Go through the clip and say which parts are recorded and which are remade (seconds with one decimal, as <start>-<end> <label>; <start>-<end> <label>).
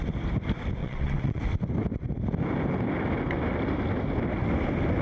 0.0-0.8 recorded; 0.8-1.4 remade; 1.4-5.0 recorded